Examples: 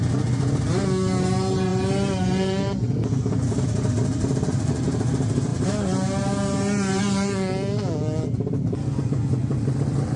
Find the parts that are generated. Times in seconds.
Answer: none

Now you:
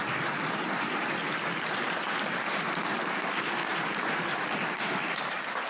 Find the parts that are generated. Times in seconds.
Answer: 0.0-5.7

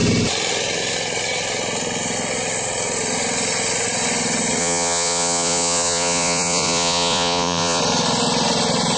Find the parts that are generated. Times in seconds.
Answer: 4.6-7.8

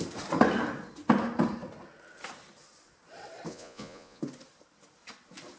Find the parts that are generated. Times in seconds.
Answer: 3.5-4.2

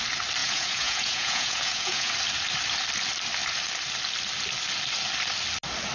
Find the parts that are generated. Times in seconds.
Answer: 0.4-2.1